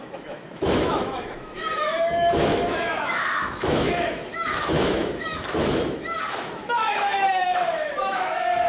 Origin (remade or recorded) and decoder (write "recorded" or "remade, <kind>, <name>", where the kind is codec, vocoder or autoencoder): remade, autoencoder, DAC-VAE